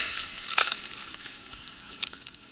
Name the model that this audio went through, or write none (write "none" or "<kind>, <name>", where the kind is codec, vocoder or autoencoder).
codec, SNAC